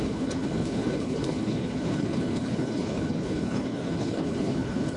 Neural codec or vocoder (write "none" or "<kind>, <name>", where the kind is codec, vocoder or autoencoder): codec, HILCodec